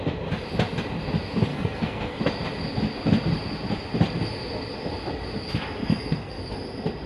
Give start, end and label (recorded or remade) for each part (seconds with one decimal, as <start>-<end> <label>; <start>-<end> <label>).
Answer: 0.0-1.5 recorded; 1.5-2.2 remade; 2.2-5.8 recorded; 5.8-6.4 remade; 6.4-7.1 recorded